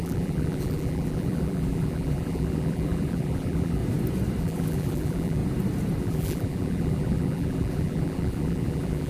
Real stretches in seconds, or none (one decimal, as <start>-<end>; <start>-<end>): 3.8-4.4; 5.4-6.0